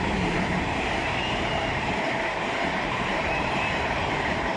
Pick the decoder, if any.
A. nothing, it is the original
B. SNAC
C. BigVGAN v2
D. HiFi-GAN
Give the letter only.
C